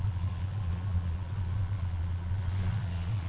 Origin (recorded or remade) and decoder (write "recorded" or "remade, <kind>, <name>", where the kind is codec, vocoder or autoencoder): remade, vocoder, Vocos